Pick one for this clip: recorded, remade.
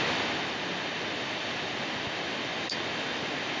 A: recorded